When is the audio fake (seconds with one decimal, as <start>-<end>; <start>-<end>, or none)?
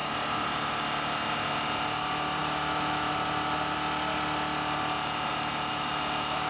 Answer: 2.4-3.1; 5.7-6.5